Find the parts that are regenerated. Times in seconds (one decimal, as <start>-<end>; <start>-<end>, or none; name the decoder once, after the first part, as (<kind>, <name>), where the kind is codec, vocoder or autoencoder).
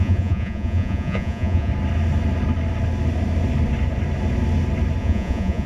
0.0-1.7 (vocoder, Vocos); 5.0-5.7